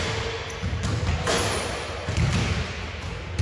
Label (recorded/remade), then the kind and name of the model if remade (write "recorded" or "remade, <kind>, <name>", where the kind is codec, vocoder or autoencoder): recorded